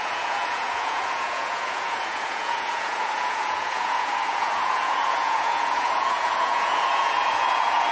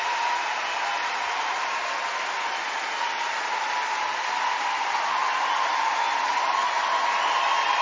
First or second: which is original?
second